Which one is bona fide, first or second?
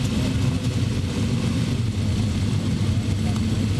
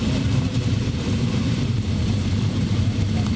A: first